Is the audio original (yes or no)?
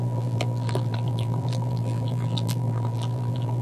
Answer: no